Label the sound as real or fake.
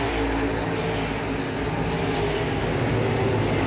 real